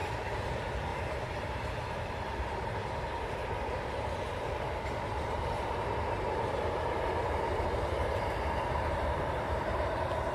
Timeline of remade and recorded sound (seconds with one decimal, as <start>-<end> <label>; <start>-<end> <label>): 0.0-10.3 remade